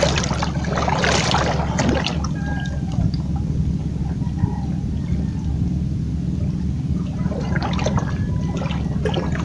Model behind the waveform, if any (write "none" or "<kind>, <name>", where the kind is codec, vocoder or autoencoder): none